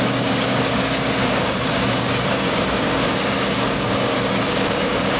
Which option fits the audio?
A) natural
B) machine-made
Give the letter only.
B